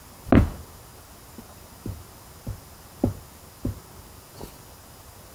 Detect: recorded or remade recorded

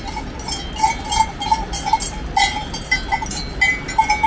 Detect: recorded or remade recorded